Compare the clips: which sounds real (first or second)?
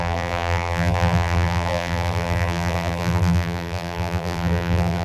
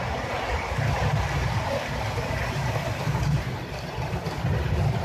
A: second